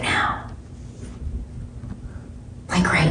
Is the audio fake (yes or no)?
no